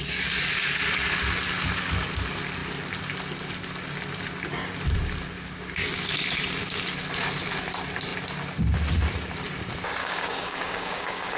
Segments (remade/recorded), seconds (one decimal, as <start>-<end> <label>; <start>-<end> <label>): 0.0-10.0 recorded; 10.0-11.4 remade